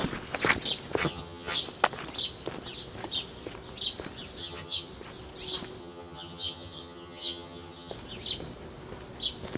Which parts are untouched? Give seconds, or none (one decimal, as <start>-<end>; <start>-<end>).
0.0-1.0; 1.6-4.4; 4.9-5.8; 7.9-9.6